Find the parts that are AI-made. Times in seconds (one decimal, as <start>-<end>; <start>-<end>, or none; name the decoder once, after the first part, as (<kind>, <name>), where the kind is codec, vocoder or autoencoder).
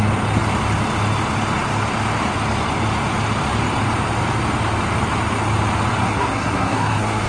6.0-7.3 (codec, SNAC)